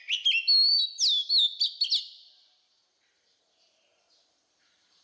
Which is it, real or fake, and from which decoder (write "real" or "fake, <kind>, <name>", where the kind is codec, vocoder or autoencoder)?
real